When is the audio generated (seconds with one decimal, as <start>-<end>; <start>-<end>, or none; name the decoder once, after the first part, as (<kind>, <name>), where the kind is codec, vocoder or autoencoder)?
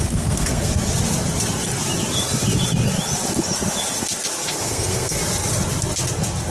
0.0-0.7 (codec, SNAC); 4.6-5.2